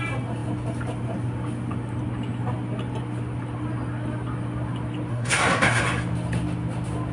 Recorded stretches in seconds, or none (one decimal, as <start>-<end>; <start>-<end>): 0.0-5.1; 5.8-7.1